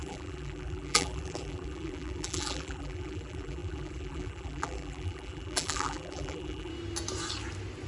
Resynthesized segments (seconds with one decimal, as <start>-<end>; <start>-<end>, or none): 0.0-6.7